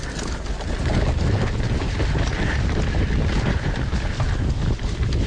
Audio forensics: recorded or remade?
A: recorded